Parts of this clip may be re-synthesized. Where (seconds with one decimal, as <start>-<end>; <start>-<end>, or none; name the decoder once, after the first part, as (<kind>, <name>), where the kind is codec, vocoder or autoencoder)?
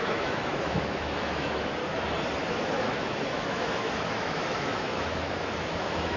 0.0-1.8 (autoencoder, DAC-VAE); 2.5-6.2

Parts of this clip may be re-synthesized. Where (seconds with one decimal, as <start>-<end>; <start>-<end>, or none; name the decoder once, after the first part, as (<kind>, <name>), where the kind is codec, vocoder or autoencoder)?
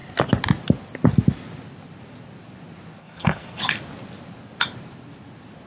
3.0-3.6 (codec, SNAC)